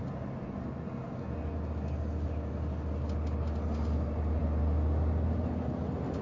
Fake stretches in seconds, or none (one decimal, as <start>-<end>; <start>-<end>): none